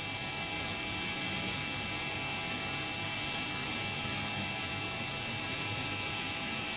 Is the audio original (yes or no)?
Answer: yes